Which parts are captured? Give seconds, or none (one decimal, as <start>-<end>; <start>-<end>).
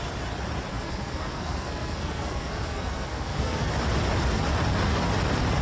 0.0-0.7; 3.7-5.6